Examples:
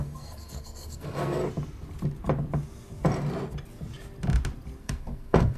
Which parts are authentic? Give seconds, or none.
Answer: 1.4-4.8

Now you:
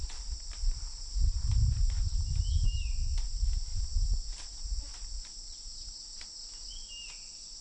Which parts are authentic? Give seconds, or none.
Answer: 0.0-7.6

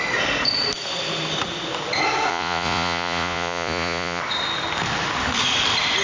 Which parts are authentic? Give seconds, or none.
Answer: 0.0-2.3; 4.2-6.0

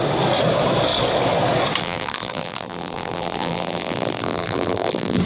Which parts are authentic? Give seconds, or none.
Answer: 0.0-1.8

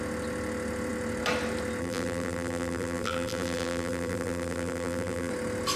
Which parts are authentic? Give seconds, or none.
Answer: 0.0-1.8; 5.3-5.8

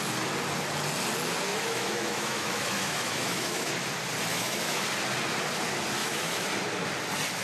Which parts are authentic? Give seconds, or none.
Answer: 0.0-1.5; 3.7-4.3; 4.8-6.0; 6.5-7.4